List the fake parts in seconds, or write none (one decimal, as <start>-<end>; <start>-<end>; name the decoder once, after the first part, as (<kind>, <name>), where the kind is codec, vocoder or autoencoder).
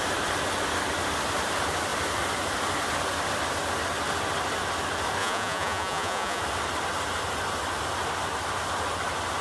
5.2-6.4 (vocoder, Vocos)